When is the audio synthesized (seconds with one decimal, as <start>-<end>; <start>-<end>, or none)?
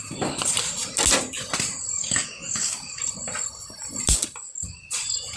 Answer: 2.0-3.0